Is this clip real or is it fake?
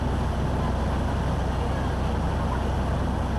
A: real